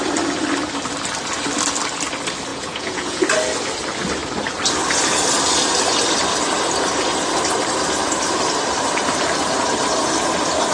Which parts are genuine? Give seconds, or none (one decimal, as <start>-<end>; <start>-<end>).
0.0-2.5; 3.2-10.7